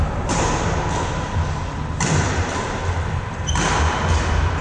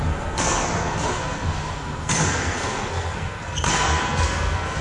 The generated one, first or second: second